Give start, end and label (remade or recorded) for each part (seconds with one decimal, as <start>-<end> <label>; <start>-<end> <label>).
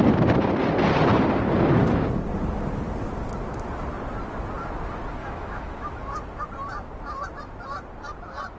0.0-5.2 recorded; 5.2-6.0 remade; 6.0-8.6 recorded